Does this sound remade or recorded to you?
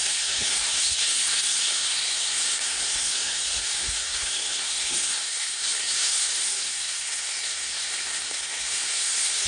remade